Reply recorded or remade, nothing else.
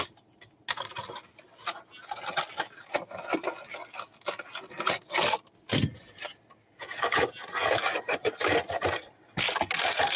recorded